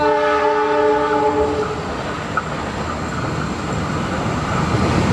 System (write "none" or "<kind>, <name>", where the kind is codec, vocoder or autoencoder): none